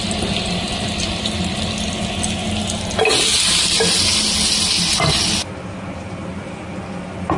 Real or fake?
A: real